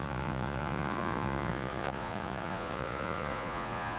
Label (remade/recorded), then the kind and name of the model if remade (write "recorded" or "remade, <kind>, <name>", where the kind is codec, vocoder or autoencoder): remade, vocoder, Vocos